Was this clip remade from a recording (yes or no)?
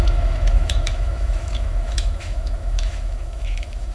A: yes